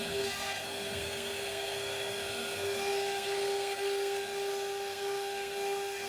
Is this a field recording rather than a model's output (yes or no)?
no